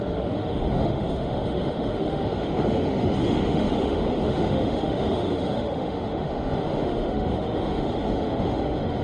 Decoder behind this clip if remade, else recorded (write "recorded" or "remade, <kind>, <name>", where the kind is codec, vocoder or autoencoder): remade, autoencoder, DAC-VAE